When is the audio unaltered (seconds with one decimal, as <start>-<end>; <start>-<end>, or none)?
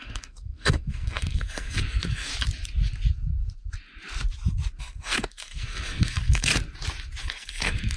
2.3-4.8; 6.5-7.2